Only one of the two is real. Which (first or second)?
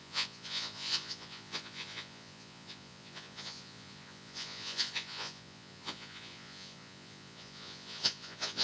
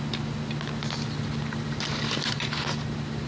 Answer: second